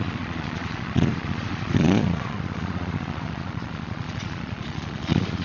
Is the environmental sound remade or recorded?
remade